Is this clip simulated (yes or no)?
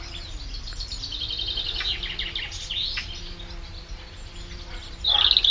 no